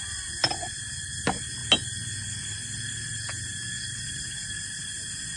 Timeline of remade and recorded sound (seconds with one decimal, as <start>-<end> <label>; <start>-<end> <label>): 0.0-5.4 recorded